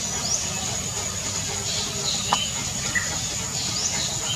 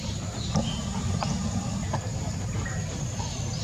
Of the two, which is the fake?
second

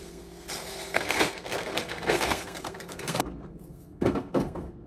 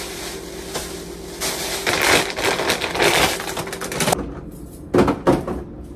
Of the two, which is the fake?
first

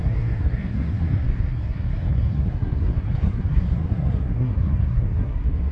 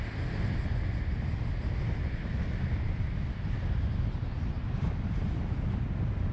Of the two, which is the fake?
first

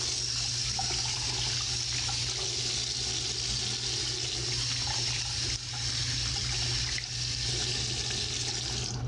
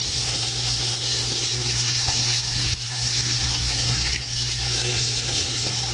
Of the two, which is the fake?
second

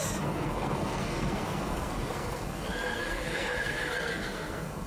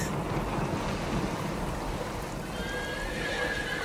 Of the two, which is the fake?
first